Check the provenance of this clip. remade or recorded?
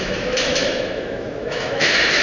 remade